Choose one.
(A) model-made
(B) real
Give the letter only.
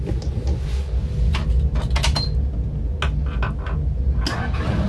B